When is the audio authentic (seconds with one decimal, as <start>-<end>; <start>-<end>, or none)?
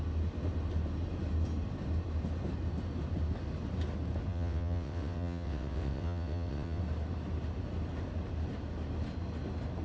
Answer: 0.0-4.3; 6.8-9.8